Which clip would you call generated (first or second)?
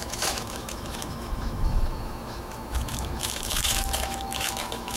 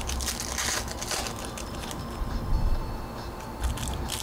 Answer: first